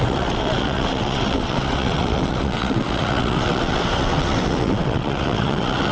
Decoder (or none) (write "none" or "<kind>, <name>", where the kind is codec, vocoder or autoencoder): vocoder, WaveNeXt